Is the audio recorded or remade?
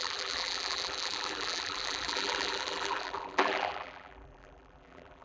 remade